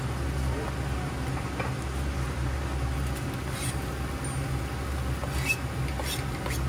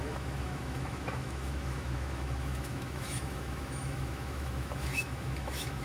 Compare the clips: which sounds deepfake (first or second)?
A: second